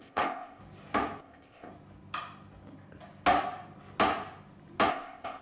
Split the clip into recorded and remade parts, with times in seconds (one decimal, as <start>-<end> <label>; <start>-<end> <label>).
0.0-0.6 remade; 0.6-1.2 recorded; 1.2-1.7 remade; 1.7-4.9 recorded; 4.9-5.4 remade